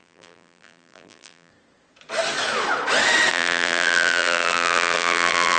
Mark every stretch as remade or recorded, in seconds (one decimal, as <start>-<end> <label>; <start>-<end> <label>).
0.0-1.5 remade; 1.5-3.3 recorded; 3.3-5.6 remade